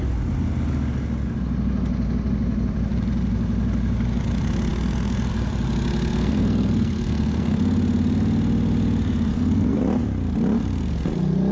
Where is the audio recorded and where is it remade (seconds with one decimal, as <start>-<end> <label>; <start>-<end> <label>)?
0.0-6.1 recorded; 6.1-7.6 remade; 7.6-9.3 recorded; 9.3-9.8 remade; 9.8-11.5 recorded

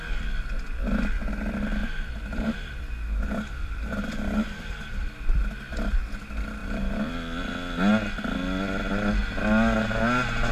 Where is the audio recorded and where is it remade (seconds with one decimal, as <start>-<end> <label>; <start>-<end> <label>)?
0.0-1.8 recorded; 1.8-5.0 remade; 5.0-6.6 recorded; 6.6-7.1 remade; 7.1-10.5 recorded

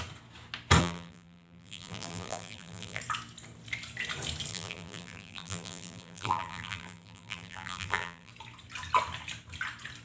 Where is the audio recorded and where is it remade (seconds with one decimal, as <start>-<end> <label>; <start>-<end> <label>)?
0.0-0.8 recorded; 0.8-3.0 remade; 3.0-4.5 recorded; 4.5-8.3 remade; 8.3-10.0 recorded

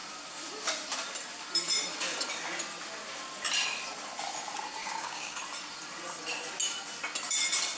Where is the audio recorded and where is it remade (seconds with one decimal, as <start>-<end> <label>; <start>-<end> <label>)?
0.0-4.8 recorded; 4.8-5.4 remade; 5.4-7.8 recorded

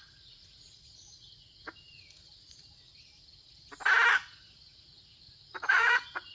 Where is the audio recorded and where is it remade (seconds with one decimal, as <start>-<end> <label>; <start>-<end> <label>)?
0.0-2.9 remade; 2.9-4.7 recorded; 4.7-6.3 remade